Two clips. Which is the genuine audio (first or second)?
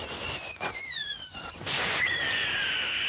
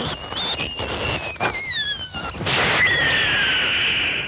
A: second